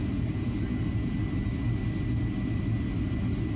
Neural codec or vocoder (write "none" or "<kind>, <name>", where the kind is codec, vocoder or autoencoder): none